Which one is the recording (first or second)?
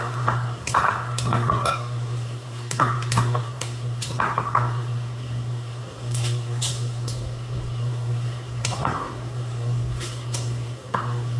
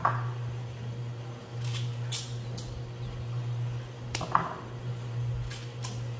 second